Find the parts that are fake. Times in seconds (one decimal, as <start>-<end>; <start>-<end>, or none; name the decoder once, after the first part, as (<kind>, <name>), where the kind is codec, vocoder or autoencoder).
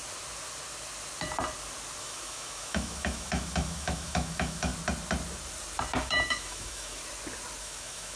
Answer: 2.0-4.7 (autoencoder, DAC-VAE); 6.0-7.0; 7.6-8.2